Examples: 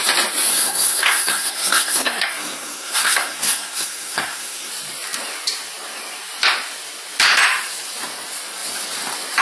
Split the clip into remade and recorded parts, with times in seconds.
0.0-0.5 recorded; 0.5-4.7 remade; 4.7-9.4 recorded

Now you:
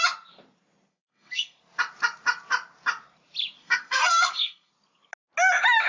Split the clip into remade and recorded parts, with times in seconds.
0.0-0.9 recorded; 0.9-1.6 remade; 1.6-3.6 recorded; 3.6-4.7 remade; 4.7-5.9 recorded

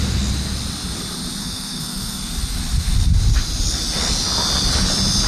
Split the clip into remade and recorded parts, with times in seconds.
0.0-1.4 recorded; 1.4-2.3 remade; 2.3-5.3 recorded